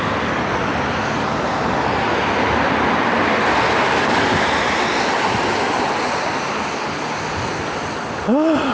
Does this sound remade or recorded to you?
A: recorded